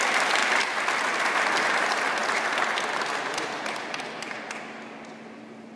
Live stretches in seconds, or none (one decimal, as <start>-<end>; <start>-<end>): 0.0-5.8